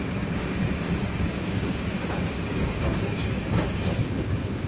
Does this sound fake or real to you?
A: fake